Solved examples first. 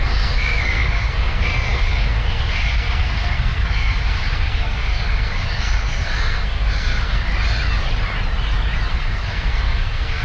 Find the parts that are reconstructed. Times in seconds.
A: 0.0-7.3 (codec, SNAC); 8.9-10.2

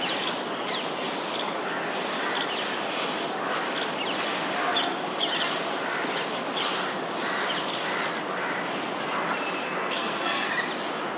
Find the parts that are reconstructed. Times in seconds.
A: 9.6-10.5 (codec, SNAC)

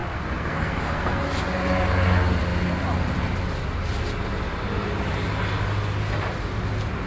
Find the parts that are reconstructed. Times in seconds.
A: 0.0-1.2 (codec, SNAC)

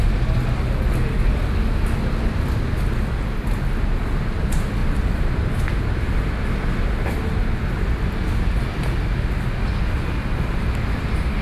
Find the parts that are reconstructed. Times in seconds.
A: none

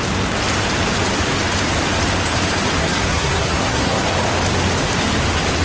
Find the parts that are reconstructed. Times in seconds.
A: 2.8-4.0 (codec, SNAC)